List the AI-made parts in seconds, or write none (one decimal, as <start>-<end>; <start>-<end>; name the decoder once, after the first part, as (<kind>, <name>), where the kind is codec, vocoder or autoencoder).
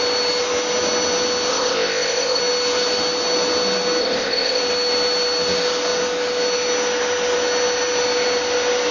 1.5-2.4 (codec, ZipCodec); 4.0-4.6